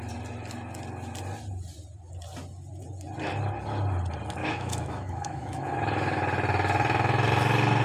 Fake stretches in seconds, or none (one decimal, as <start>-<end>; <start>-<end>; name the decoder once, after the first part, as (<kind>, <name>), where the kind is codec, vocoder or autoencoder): 4.4-5.7 (autoencoder, DAC-VAE)

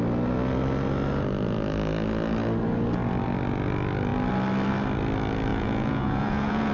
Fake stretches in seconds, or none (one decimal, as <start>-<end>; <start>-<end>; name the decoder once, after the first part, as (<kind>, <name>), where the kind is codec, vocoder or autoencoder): 5.5-6.7 (vocoder, Vocos)